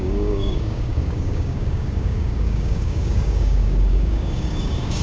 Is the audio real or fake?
fake